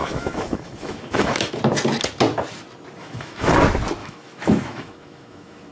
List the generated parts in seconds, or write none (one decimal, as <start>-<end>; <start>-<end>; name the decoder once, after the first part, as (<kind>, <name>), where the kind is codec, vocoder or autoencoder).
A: 0.0-1.6 (autoencoder, DAC-VAE); 3.0-3.5; 4.0-5.7